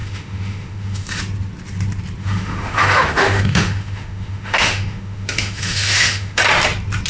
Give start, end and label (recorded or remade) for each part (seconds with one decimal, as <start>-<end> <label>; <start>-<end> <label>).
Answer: 0.0-1.2 remade; 1.2-2.2 recorded; 2.2-6.4 remade; 6.4-7.1 recorded